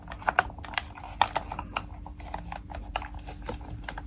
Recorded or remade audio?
recorded